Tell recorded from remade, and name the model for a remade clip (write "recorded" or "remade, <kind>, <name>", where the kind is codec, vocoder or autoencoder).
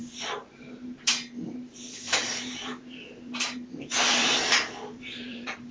remade, vocoder, BigVGAN v2